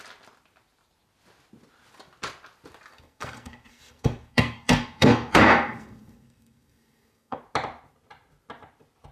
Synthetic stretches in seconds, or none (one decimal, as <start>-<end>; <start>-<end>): 2.9-7.4